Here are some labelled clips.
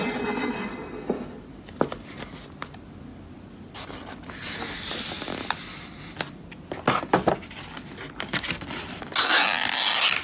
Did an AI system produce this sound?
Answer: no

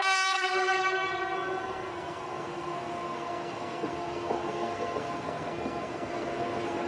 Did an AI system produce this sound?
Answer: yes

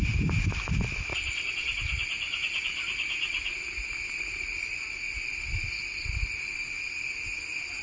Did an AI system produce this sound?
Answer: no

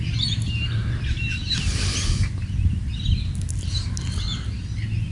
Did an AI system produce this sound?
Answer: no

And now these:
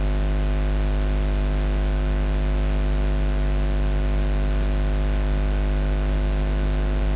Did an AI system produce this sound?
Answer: no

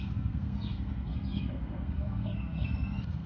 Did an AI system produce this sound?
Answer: yes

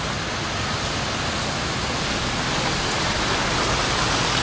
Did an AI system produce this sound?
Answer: no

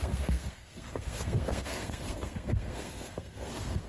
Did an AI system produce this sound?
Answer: yes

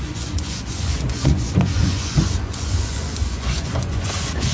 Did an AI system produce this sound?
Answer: yes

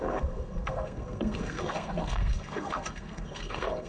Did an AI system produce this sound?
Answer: yes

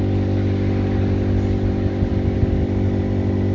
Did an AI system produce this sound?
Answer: no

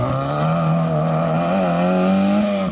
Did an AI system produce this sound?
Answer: no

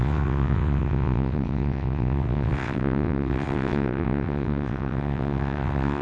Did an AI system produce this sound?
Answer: yes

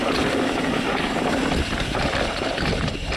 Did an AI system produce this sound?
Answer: yes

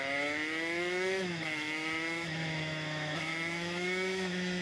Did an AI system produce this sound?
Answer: yes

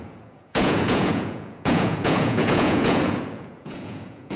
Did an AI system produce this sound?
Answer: yes